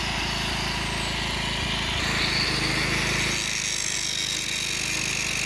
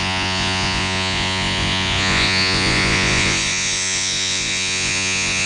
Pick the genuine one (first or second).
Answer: first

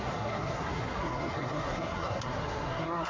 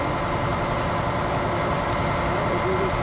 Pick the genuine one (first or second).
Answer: second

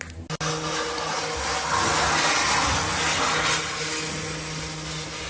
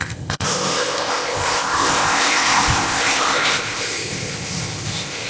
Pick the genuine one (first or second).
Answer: first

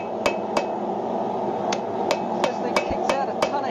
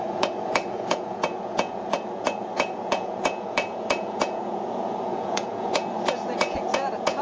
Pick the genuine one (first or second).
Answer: first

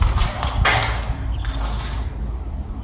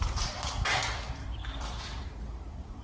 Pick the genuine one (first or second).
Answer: first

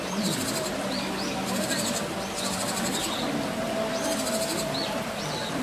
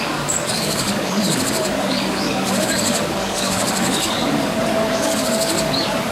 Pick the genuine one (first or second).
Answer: first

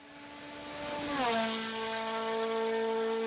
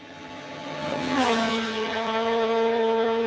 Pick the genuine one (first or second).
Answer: first